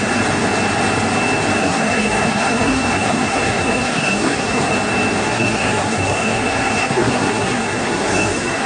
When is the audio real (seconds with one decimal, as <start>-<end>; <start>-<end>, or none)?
0.0-1.6; 4.7-5.2